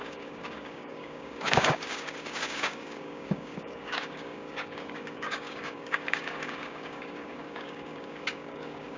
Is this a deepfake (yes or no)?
yes